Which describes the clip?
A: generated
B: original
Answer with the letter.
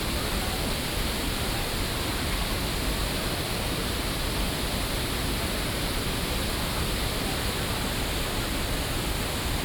B